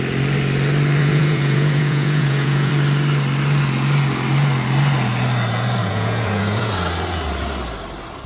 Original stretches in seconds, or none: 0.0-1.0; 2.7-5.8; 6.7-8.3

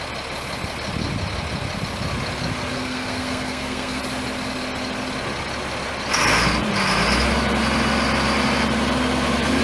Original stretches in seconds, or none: 0.0-2.7; 4.0-9.6

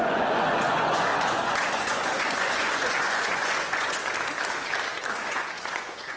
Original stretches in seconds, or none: 4.0-5.1

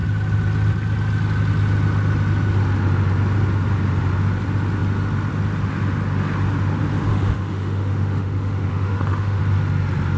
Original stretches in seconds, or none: 0.0-7.1; 9.4-10.2

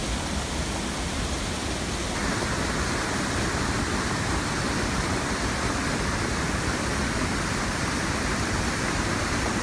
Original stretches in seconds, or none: 0.0-9.6